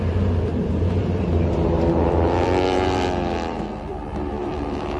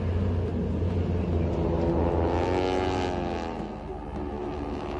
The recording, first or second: second